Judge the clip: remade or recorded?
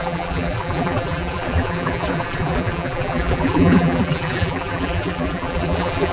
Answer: remade